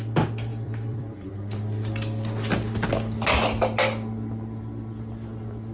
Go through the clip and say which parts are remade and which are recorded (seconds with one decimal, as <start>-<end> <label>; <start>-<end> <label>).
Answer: 0.0-0.5 recorded; 0.5-1.3 remade; 1.3-5.7 recorded